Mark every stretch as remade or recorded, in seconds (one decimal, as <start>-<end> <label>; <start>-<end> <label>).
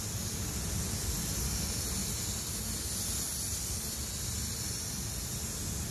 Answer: 0.0-5.9 recorded